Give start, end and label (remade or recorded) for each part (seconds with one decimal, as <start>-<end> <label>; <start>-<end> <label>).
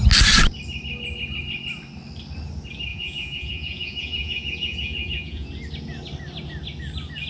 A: 0.0-2.9 recorded; 2.9-5.5 remade; 5.5-7.3 recorded